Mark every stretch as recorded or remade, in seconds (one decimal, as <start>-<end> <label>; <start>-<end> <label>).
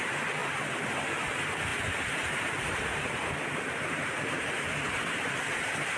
0.0-6.0 recorded